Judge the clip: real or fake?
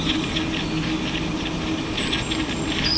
real